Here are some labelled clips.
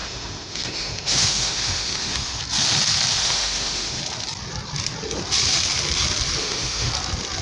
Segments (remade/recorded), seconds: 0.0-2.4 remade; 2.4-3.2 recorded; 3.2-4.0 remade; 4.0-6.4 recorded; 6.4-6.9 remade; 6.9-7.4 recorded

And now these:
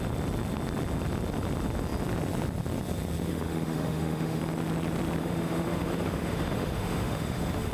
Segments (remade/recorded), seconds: 0.0-3.3 recorded; 3.3-4.4 remade; 4.4-5.2 recorded; 5.2-7.7 remade

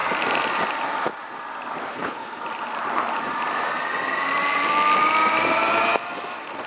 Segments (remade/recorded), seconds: 0.0-1.9 recorded; 1.9-2.4 remade; 2.4-6.7 recorded